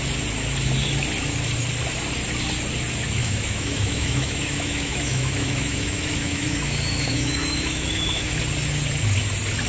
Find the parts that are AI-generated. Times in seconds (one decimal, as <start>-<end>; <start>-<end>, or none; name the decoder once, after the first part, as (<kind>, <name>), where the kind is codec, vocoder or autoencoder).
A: 3.2-8.4 (autoencoder, DAC-VAE)